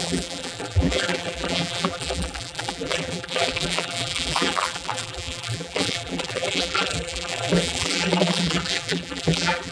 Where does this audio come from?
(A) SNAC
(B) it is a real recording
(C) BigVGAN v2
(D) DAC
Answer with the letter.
C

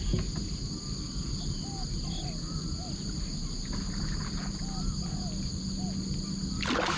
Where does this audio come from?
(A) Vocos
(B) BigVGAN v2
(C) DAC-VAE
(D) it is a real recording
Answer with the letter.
D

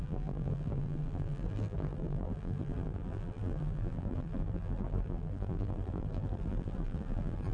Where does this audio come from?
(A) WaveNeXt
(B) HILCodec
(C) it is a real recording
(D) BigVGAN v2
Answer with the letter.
D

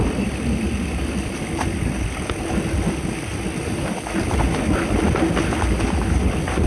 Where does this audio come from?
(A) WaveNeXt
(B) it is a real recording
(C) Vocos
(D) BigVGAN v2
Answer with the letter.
D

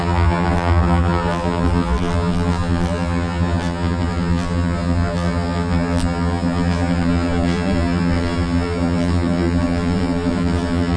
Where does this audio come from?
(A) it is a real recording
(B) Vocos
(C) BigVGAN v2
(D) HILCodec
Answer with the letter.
C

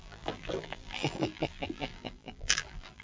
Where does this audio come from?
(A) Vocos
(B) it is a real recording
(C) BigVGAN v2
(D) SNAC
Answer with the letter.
C